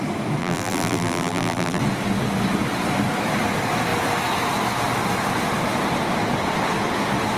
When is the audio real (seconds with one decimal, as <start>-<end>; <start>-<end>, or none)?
0.0-0.4; 1.8-7.4